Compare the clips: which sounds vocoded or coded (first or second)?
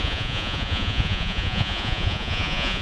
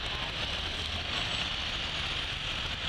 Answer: first